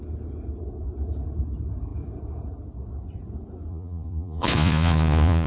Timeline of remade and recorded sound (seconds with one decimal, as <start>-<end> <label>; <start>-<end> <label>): 0.0-3.7 recorded; 3.7-5.5 remade